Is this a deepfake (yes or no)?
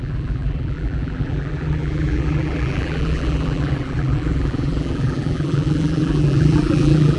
yes